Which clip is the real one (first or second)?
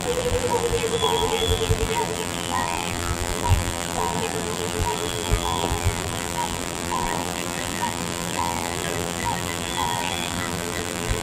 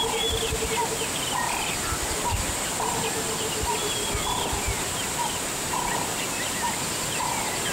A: second